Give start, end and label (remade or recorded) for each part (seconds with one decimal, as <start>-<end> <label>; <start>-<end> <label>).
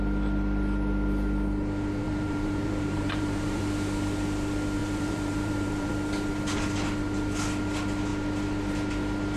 0.0-2.0 recorded; 2.0-3.6 remade; 3.6-4.8 recorded; 4.8-5.9 remade; 5.9-9.4 recorded